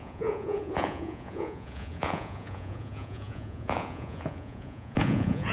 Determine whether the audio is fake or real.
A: fake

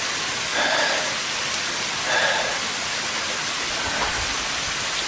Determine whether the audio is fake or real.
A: real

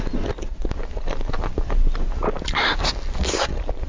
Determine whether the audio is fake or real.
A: real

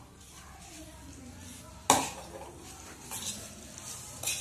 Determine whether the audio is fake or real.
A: real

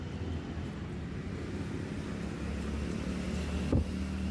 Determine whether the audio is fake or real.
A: real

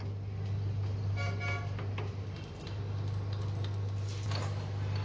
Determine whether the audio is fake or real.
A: real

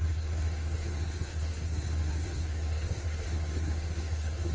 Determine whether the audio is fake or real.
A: fake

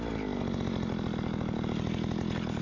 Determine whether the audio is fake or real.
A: real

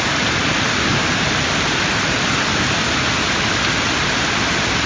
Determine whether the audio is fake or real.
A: real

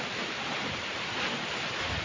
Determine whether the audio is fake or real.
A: real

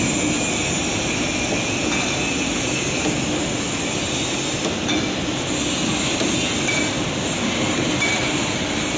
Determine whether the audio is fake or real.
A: real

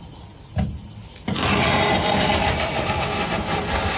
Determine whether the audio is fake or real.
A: real